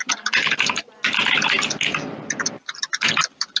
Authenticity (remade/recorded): recorded